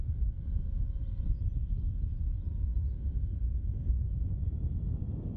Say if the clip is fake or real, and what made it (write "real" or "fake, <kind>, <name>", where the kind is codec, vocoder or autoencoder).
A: real